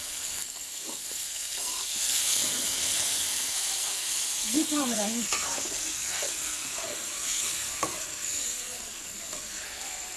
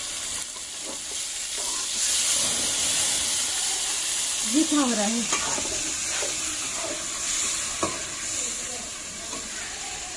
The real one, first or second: second